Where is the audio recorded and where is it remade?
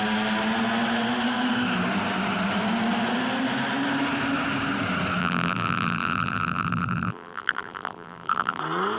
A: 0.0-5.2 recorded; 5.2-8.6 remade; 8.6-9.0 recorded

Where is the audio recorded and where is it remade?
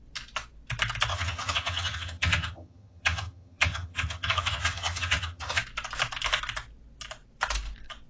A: 0.0-1.1 recorded; 1.1-5.6 remade; 5.6-8.1 recorded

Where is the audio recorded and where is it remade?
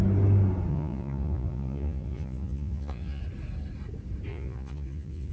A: 0.0-0.7 recorded; 0.7-3.2 remade; 3.2-4.3 recorded; 4.3-5.3 remade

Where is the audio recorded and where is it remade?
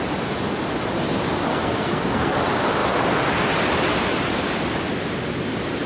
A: 0.0-1.5 recorded; 1.5-2.3 remade; 2.3-5.9 recorded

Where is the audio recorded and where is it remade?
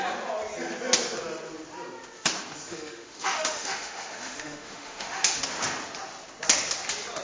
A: 0.0-2.7 recorded; 2.7-5.4 remade; 5.4-7.2 recorded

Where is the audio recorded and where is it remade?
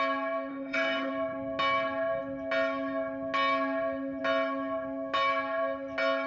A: 0.0-0.5 recorded; 0.5-1.1 remade; 1.1-6.3 recorded